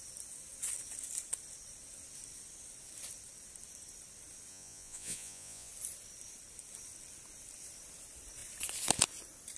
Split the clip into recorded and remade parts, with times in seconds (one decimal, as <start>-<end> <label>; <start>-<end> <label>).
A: 0.0-4.5 recorded; 4.5-5.7 remade; 5.7-9.6 recorded